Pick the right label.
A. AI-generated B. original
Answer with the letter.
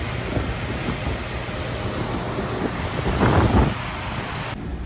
B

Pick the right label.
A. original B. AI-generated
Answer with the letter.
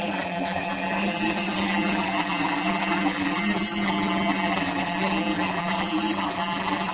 B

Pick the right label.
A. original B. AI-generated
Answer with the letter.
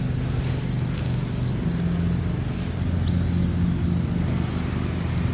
A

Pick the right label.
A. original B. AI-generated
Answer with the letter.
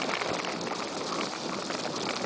A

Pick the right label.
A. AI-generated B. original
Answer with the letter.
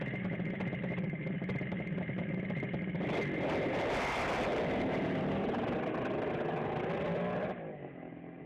B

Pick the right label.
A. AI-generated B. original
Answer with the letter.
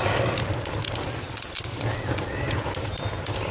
B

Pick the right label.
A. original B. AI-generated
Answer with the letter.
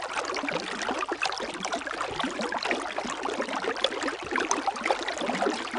A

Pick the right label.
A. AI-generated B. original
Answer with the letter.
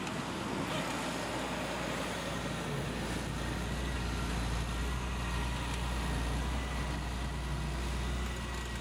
B